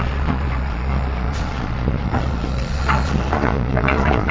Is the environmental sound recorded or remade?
remade